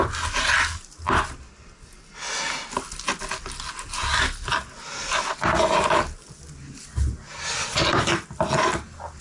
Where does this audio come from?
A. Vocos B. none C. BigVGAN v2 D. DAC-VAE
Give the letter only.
B